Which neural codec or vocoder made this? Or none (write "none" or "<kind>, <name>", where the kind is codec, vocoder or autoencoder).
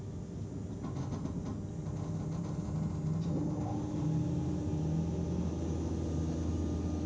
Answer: none